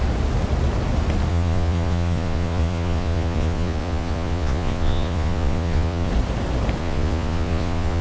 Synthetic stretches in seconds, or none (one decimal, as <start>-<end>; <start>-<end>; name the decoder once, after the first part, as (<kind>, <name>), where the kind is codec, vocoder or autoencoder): 1.3-6.1 (vocoder, Vocos); 6.8-8.0